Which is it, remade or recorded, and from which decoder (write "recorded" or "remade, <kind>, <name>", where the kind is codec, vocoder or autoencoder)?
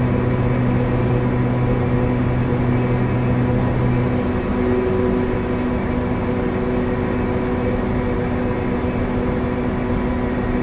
recorded